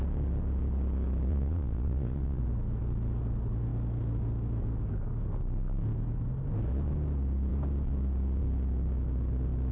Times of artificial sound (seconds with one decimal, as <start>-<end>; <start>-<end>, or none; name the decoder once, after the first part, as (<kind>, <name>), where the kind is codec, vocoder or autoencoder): 1.3-2.4 (vocoder, Vocos)